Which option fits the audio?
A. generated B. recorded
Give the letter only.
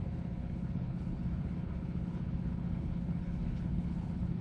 A